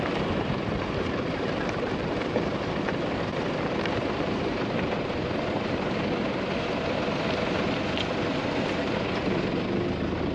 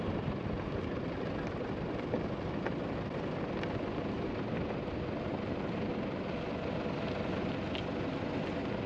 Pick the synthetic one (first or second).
first